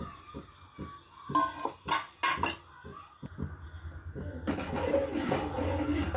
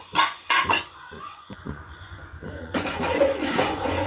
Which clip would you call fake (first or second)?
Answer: second